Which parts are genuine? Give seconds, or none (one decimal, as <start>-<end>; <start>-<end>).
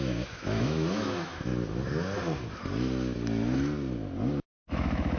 1.5-4.6